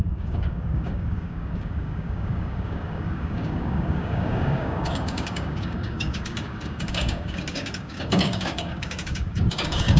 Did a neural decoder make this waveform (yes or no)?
yes